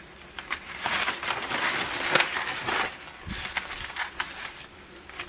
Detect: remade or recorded recorded